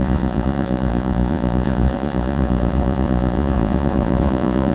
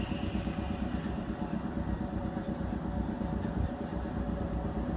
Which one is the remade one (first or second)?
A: first